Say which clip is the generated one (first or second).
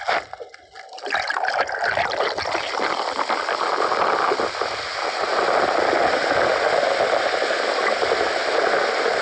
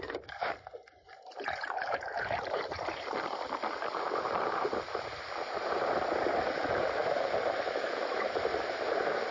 second